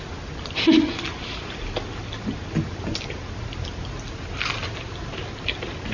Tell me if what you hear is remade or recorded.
recorded